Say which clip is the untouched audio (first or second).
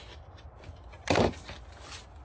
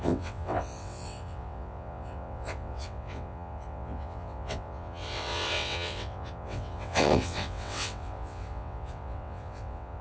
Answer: first